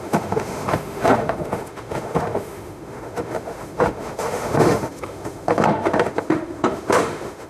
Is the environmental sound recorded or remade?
remade